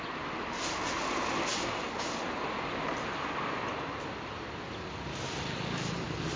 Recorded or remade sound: recorded